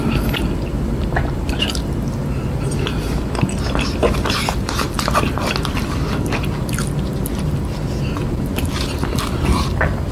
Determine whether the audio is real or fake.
real